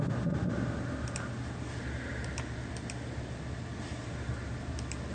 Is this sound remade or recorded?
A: remade